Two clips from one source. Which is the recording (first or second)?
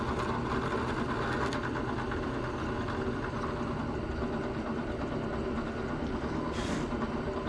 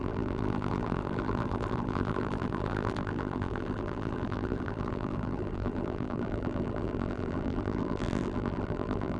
first